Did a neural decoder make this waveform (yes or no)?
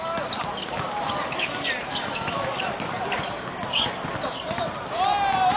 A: no